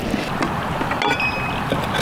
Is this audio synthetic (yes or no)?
no